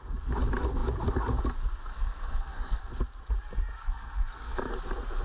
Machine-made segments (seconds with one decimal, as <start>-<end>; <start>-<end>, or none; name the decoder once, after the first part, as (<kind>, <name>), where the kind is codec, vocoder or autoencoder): 1.9-2.8 (codec, SNAC); 3.8-4.7